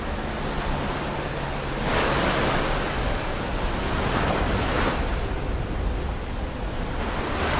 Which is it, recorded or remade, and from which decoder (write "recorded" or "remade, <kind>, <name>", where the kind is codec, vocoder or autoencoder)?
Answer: recorded